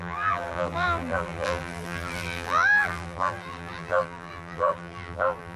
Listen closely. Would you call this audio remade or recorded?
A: remade